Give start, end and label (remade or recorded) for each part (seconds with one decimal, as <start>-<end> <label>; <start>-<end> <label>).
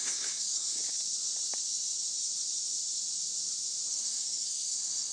0.0-0.8 remade; 0.8-3.9 recorded; 3.9-5.1 remade